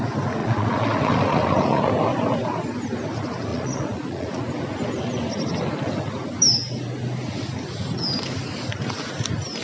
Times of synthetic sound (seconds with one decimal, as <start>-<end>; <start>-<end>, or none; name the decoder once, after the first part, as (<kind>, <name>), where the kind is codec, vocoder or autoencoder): 0.4-1.9 (vocoder, Vocos); 3.5-4.4